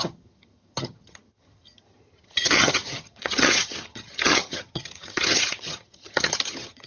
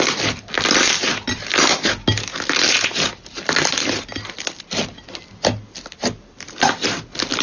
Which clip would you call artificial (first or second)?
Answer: first